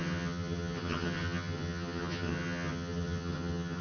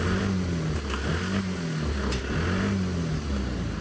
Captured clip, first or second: second